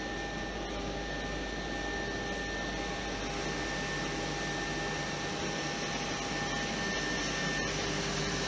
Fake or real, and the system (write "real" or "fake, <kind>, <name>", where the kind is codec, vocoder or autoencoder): real